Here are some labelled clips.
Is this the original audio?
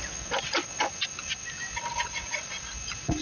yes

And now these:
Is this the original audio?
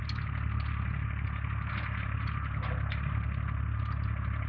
yes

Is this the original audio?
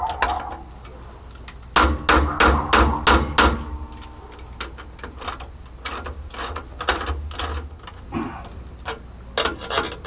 yes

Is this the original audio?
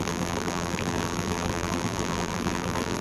no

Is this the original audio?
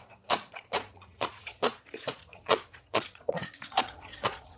no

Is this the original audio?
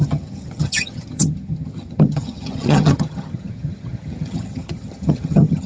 no